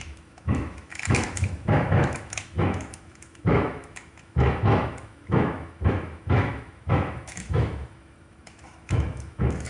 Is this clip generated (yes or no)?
yes